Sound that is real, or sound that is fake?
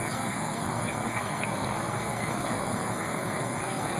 fake